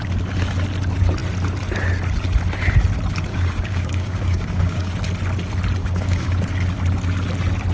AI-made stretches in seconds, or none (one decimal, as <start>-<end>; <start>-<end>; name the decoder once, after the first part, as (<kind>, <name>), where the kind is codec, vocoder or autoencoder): 3.3-4.9 (codec, DAC); 5.8-6.4